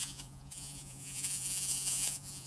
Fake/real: fake